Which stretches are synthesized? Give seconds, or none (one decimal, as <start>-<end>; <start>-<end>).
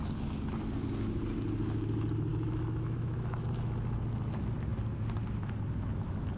2.3-3.4